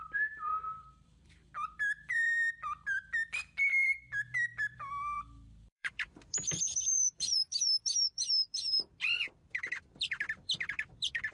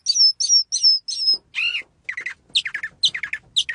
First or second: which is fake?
first